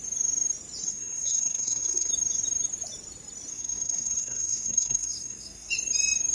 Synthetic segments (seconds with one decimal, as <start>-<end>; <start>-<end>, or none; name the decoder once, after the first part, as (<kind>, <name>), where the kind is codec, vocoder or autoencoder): 0.9-2.1 (codec, SNAC); 3.5-5.7